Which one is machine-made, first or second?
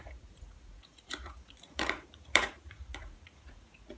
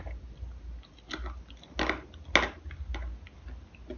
first